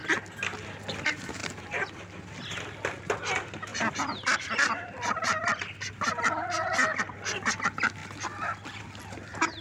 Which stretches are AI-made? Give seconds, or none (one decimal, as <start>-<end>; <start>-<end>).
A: 1.4-3.0; 8.0-8.8